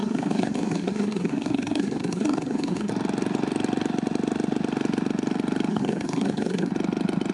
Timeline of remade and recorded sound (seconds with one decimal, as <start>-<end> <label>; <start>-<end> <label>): 0.0-2.9 remade; 2.9-5.7 recorded; 5.7-6.7 remade; 6.7-7.3 recorded